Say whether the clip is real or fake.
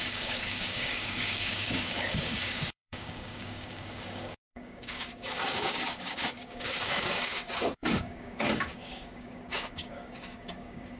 fake